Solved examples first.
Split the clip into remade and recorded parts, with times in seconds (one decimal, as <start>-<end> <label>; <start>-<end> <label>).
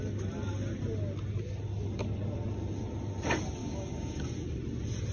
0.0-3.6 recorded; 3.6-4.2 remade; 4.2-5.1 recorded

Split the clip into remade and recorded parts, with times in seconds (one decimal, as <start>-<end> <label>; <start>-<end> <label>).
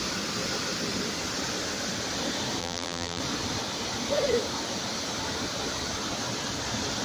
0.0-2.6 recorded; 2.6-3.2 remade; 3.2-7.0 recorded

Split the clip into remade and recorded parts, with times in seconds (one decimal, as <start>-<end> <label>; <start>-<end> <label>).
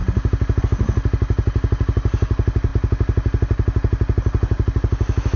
0.0-5.4 recorded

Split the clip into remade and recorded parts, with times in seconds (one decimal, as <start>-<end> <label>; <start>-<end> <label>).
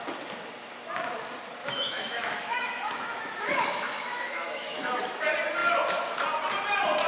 0.0-1.6 recorded; 1.6-5.0 remade; 5.0-7.1 recorded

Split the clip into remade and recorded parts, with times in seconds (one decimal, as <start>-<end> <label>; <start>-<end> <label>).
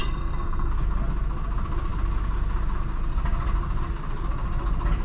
0.0-0.7 remade; 0.7-5.0 recorded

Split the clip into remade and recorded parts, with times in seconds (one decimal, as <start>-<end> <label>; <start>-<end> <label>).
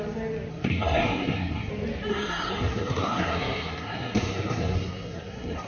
0.0-0.5 recorded; 0.5-1.7 remade; 1.7-2.1 recorded; 2.1-5.7 remade